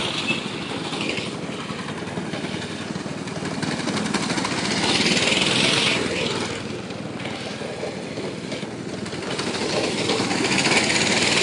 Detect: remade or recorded recorded